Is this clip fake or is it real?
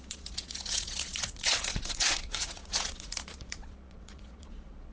fake